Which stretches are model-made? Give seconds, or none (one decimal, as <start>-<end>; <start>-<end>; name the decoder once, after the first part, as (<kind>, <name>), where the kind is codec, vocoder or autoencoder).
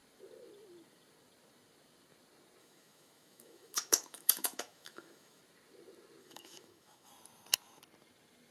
2.6-5.4 (autoencoder, DAC-VAE); 6.2-7.1